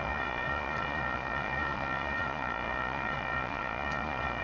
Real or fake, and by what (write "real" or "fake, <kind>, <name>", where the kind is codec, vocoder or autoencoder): fake, vocoder, Vocos